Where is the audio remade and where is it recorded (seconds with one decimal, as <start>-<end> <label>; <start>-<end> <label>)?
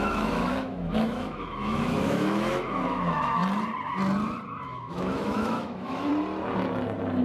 0.0-3.4 remade; 3.4-4.6 recorded; 4.6-6.1 remade; 6.1-7.2 recorded